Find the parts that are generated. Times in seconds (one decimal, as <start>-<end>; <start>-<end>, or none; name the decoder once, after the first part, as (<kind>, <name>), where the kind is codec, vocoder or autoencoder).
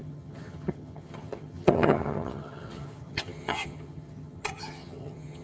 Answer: 0.0-5.4 (vocoder, HiFi-GAN)